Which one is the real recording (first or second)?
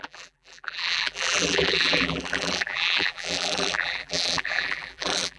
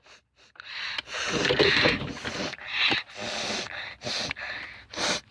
second